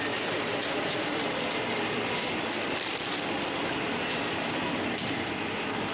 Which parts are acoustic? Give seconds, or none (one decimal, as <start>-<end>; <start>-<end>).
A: 0.0-5.9